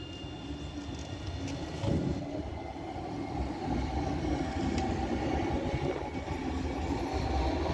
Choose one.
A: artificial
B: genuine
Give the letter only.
B